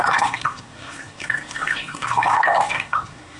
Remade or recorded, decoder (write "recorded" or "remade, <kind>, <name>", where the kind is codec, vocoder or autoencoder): remade, codec, SNAC